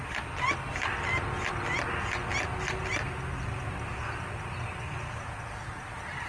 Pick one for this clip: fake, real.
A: real